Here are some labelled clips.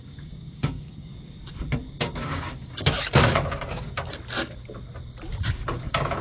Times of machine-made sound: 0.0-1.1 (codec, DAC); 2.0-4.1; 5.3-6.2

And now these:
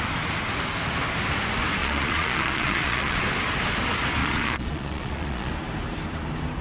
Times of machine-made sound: 1.8-3.2 (vocoder, Vocos); 4.2-5.5

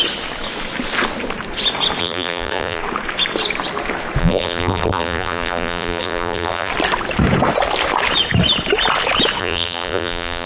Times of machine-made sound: 2.0-2.8 (vocoder, BigVGAN v2); 4.2-6.7; 9.4-10.5

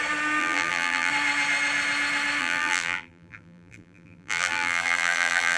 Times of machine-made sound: 0.4-1.1 (vocoder, BigVGAN v2); 2.4-5.6